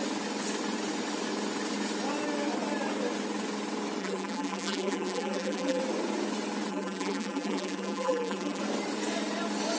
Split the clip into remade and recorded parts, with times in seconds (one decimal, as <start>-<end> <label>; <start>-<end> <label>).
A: 0.0-4.0 recorded; 4.0-5.8 remade; 5.8-6.7 recorded; 6.7-8.6 remade; 8.6-9.8 recorded